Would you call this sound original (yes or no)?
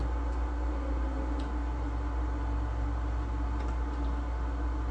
yes